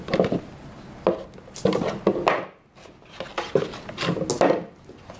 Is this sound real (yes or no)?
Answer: yes